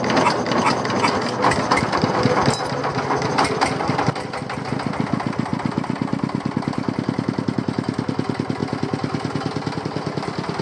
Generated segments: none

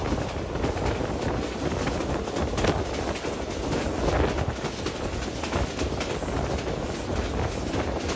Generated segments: none

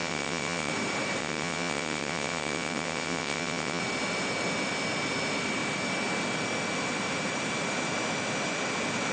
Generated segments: 0.0-0.7 (vocoder, WaveNeXt); 1.2-3.8